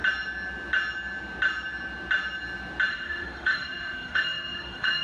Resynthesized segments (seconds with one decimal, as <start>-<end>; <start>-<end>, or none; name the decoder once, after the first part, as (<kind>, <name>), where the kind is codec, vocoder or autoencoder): 2.9-5.0 (autoencoder, DAC-VAE)